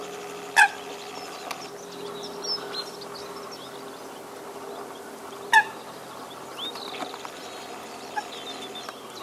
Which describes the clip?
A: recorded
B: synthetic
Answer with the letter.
A